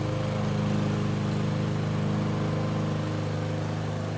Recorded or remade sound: recorded